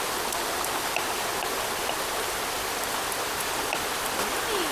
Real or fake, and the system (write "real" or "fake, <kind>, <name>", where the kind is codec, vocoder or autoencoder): real